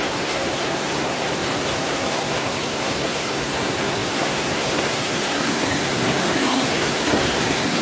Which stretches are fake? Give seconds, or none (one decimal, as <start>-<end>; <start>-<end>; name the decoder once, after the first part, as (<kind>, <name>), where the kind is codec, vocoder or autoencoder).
0.0-7.8 (codec, SNAC)